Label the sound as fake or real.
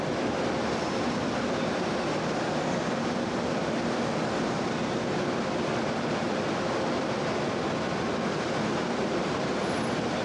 fake